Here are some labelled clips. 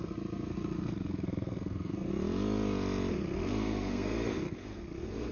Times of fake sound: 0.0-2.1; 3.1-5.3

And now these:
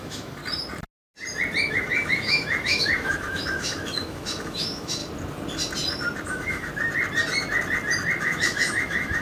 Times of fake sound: 0.0-0.4; 1.7-5.0; 6.3-6.7; 8.2-9.2

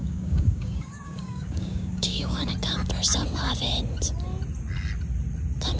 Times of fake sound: 0.0-2.5

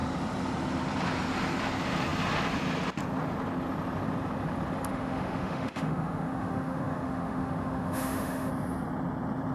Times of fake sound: 4.9-8.5